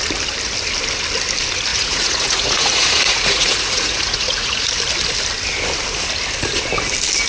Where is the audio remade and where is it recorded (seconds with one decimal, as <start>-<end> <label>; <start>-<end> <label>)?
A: 0.0-1.7 recorded; 1.7-4.7 remade; 4.7-7.3 recorded